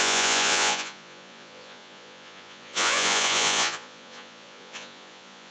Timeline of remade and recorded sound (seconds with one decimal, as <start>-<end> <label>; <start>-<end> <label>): 0.0-5.5 remade